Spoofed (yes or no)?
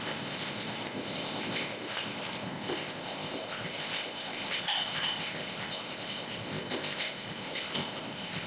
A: yes